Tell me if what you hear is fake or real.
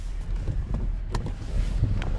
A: real